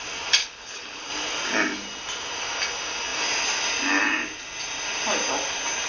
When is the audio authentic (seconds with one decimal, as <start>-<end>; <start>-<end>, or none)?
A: 0.0-0.4; 1.1-5.9